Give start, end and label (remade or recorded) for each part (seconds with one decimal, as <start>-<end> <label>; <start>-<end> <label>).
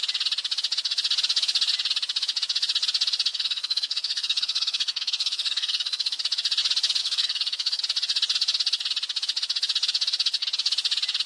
0.0-3.3 recorded; 3.3-6.2 remade; 6.2-7.0 recorded; 7.0-7.8 remade; 7.8-11.3 recorded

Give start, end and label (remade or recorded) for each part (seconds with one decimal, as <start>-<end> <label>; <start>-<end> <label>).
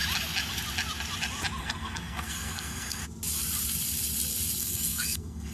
0.0-1.6 recorded; 1.6-3.0 remade; 3.0-4.6 recorded; 4.6-5.5 remade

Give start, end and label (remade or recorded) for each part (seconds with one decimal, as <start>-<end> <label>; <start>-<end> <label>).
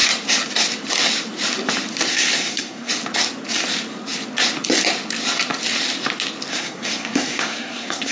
0.0-2.1 recorded; 2.1-2.9 remade; 2.9-6.5 recorded; 6.5-8.1 remade